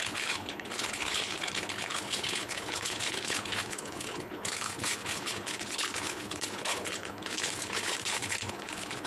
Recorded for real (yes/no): no